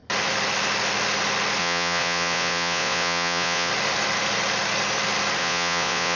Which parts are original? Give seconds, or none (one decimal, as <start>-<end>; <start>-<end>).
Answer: 0.0-1.6; 3.7-5.4